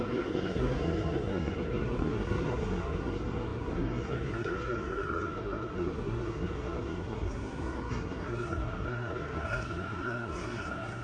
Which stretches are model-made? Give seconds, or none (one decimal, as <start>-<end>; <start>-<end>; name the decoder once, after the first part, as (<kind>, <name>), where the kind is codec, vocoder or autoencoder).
0.0-11.0 (codec, SNAC)